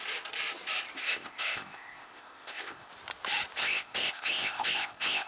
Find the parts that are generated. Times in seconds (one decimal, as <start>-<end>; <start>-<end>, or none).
1.0-2.9; 3.6-5.3